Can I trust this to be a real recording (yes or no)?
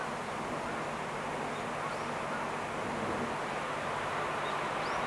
yes